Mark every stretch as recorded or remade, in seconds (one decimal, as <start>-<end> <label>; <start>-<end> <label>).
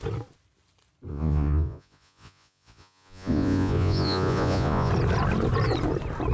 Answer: 0.0-1.1 recorded; 1.1-4.9 remade; 4.9-6.3 recorded